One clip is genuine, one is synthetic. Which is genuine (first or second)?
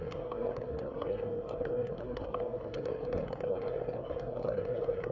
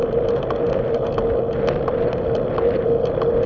second